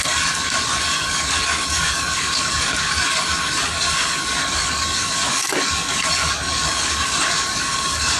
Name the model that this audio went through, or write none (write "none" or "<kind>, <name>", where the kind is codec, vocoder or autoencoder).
codec, DAC